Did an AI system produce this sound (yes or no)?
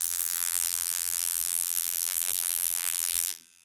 yes